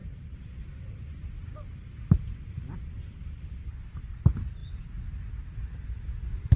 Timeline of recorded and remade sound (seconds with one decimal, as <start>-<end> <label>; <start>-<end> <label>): 0.0-4.0 remade; 4.0-6.6 recorded